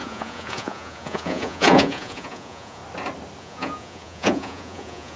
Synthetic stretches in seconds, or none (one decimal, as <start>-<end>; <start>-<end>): 0.0-2.8; 3.4-5.2